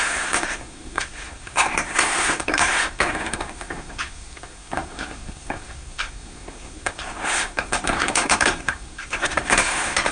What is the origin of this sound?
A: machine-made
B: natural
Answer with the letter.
A